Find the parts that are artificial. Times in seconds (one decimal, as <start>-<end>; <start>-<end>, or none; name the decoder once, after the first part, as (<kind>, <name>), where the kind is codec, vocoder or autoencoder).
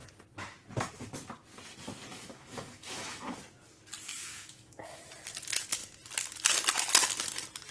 2.1-3.4 (autoencoder, DAC-VAE); 4.1-5.0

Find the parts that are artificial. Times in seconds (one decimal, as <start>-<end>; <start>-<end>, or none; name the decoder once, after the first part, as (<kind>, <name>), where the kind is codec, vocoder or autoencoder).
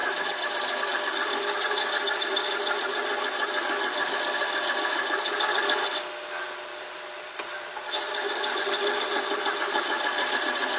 6.7-7.9 (vocoder, BigVGAN v2)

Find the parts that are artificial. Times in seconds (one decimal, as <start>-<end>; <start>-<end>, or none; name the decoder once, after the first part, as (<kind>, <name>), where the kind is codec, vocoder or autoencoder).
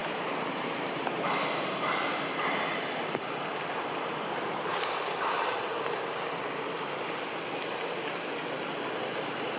0.0-1.9 (vocoder, BigVGAN v2); 4.7-5.6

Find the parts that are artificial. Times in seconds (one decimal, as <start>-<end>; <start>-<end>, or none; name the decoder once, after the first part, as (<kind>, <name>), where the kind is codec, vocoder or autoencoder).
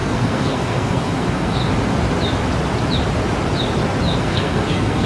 0.0-1.6 (codec, SNAC); 4.2-5.1